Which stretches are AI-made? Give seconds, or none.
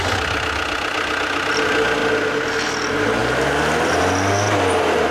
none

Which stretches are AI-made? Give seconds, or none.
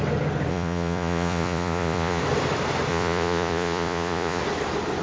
0.5-2.2 (vocoder, Vocos); 2.9-4.4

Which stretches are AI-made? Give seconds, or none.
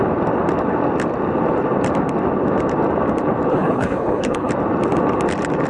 3.5-4.5 (codec, HILCodec)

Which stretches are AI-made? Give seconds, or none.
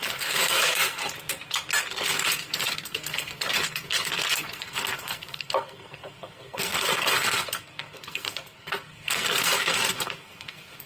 0.0-1.0 (codec, SNAC); 1.8-10.9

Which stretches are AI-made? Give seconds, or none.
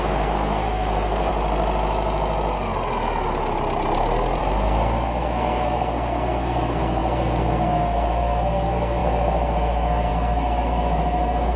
0.0-1.3 (codec, SNAC); 4.4-11.6